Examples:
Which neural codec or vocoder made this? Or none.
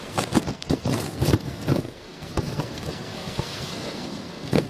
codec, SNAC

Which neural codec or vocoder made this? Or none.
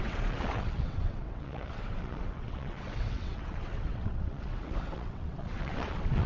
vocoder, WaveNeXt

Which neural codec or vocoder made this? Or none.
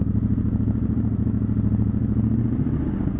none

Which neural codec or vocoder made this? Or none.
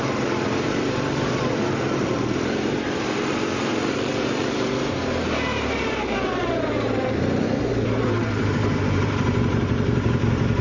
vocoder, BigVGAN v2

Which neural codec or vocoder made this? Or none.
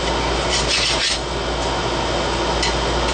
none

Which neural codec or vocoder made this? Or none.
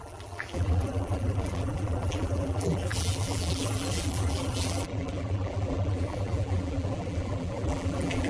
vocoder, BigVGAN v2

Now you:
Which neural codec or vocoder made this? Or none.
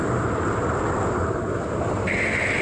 none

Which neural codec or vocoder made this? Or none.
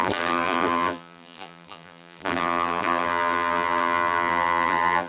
vocoder, BigVGAN v2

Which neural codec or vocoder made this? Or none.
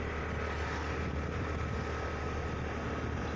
none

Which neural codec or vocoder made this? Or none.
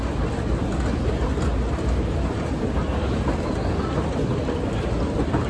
none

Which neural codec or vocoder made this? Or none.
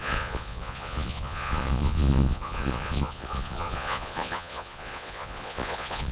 vocoder, Vocos